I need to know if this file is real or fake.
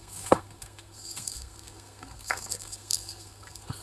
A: fake